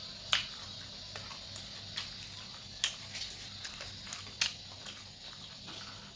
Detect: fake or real real